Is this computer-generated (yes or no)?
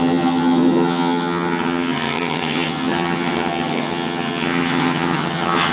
yes